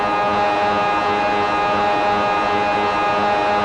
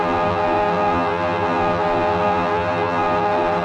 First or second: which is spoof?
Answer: second